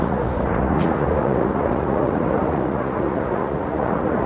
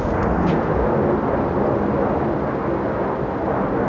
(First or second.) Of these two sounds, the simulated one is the first